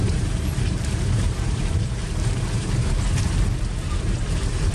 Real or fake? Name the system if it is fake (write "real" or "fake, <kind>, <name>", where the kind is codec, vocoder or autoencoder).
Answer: fake, vocoder, BigVGAN v2